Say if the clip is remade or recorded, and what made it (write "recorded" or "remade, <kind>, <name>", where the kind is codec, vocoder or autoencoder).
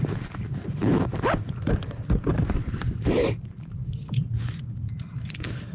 remade, vocoder, BigVGAN v2